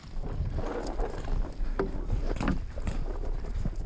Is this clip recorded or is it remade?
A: recorded